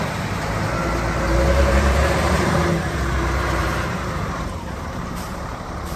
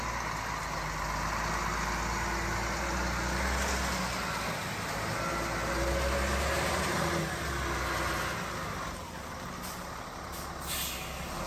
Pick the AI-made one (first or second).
first